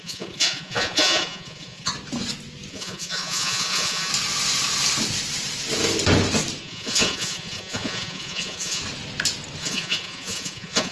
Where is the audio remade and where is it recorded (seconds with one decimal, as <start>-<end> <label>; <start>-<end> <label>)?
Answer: 0.0-1.9 remade; 1.9-2.7 recorded; 2.7-4.1 remade; 4.1-6.6 recorded; 6.6-8.8 remade; 8.8-9.6 recorded; 9.6-10.9 remade